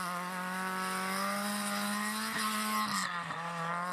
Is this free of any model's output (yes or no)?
yes